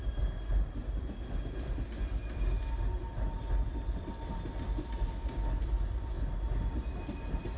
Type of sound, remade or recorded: recorded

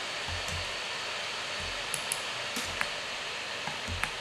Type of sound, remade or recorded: recorded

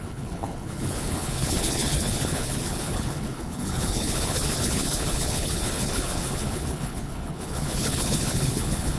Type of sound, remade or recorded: remade